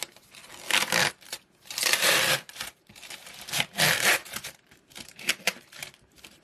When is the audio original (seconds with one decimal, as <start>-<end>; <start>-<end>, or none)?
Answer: 0.4-1.1